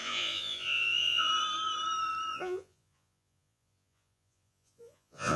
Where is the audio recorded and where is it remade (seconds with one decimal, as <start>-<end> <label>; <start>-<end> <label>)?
0.0-1.3 remade; 1.3-2.3 recorded; 2.3-5.4 remade